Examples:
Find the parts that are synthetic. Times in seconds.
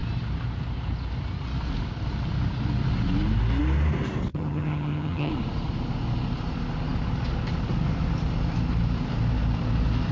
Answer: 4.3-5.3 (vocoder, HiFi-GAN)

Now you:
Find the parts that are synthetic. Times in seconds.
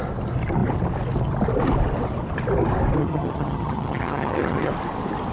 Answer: 3.0-4.7 (vocoder, HiFi-GAN)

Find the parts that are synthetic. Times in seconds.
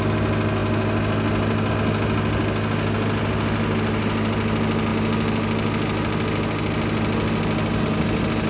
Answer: none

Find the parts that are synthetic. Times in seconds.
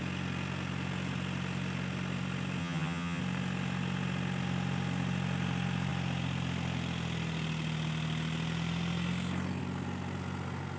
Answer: 2.6-3.2 (vocoder, HiFi-GAN)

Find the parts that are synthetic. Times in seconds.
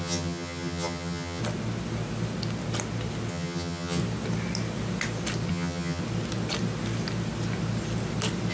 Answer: 0.0-1.4 (vocoder, HiFi-GAN); 3.3-4.0; 5.5-6.0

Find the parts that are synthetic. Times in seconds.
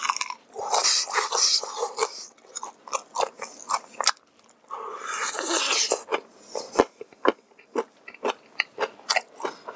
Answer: none